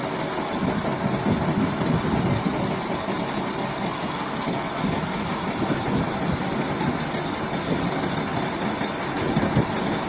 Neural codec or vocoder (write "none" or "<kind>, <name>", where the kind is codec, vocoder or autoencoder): none